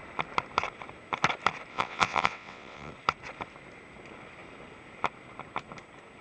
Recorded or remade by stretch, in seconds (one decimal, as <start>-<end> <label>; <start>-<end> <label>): 0.0-1.7 recorded; 1.7-2.9 remade; 2.9-6.2 recorded